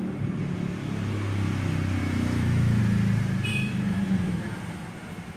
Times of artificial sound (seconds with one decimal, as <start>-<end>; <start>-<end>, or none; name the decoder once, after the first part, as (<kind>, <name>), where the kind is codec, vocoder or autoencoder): 2.0-2.8 (autoencoder, DAC-VAE); 3.5-4.5